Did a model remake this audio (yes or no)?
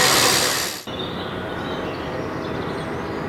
no